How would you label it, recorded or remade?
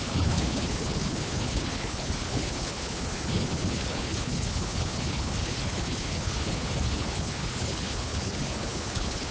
remade